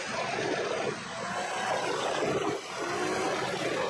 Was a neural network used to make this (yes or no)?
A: no